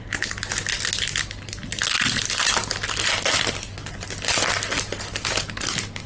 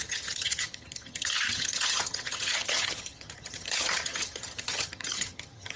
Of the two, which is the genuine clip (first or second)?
first